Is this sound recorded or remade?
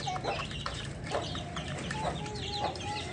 remade